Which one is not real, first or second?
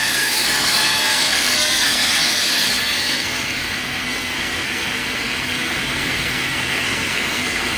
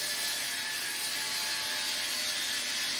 first